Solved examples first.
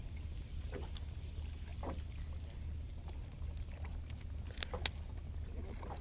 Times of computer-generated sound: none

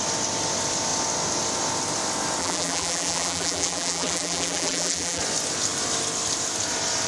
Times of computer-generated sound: 2.4-5.2 (vocoder, BigVGAN v2)

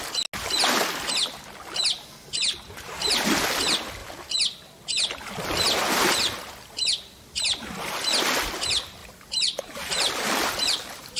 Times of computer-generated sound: 9.0-11.2 (vocoder, BigVGAN v2)

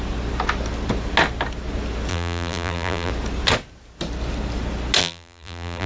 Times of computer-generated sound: 2.1-3.1 (vocoder, BigVGAN v2); 5.0-5.9

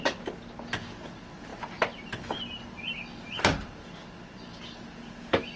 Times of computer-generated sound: none

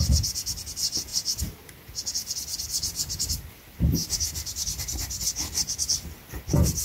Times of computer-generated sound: 4.0-5.2 (vocoder, BigVGAN v2)